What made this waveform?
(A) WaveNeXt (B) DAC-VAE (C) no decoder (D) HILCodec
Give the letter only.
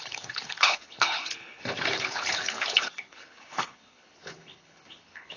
D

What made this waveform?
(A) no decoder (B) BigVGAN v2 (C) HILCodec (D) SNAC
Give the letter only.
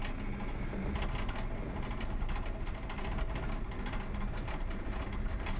A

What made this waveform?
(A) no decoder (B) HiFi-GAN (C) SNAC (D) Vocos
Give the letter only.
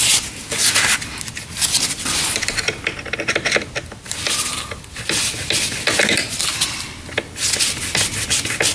A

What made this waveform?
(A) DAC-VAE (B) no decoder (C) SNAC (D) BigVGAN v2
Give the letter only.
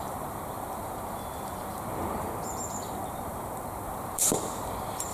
D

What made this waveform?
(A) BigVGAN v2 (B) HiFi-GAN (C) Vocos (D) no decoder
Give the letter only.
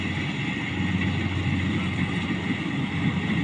D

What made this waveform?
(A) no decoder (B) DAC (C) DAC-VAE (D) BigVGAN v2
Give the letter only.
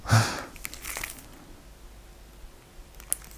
A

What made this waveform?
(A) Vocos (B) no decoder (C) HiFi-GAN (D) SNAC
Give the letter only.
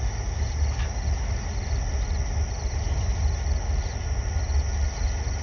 B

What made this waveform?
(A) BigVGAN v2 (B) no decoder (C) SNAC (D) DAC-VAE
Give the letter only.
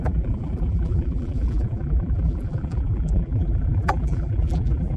A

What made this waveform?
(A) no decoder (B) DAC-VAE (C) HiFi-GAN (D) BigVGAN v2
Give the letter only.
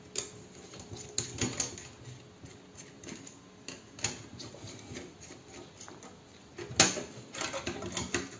A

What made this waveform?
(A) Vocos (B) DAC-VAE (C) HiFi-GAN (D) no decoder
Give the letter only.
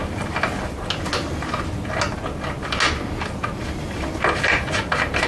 D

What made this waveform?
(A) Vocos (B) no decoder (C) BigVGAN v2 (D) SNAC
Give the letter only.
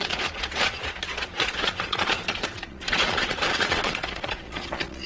A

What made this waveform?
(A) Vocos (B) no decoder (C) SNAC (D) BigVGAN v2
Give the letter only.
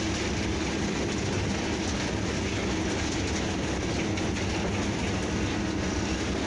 B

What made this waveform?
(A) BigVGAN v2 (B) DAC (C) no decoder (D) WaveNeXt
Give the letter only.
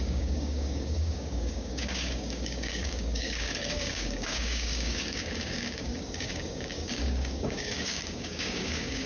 B